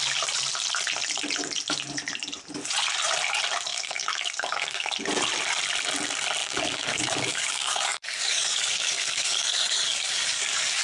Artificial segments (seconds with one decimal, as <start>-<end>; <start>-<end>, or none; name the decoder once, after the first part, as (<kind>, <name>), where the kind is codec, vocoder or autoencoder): 3.7-4.9 (codec, DAC); 6.4-10.8